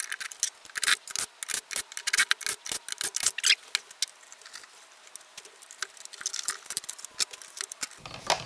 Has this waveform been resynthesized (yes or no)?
no